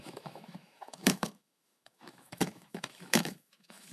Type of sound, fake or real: fake